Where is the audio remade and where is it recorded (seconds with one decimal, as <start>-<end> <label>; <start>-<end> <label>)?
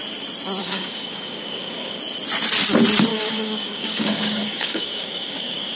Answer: 0.0-0.6 recorded; 0.6-2.0 remade; 2.0-3.1 recorded; 3.1-5.8 remade